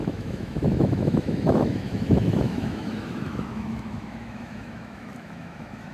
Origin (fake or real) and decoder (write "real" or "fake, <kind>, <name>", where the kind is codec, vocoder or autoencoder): fake, autoencoder, DAC-VAE